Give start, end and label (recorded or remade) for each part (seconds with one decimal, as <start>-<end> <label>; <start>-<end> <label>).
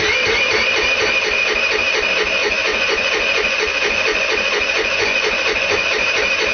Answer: 0.0-2.4 recorded; 2.4-5.9 remade; 5.9-6.5 recorded